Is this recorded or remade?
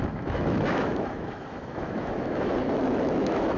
remade